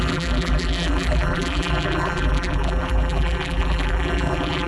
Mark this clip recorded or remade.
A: remade